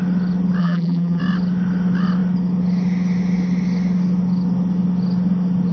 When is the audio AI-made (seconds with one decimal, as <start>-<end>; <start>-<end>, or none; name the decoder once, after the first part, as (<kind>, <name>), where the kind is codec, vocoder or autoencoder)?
0.6-1.2 (vocoder, BigVGAN v2)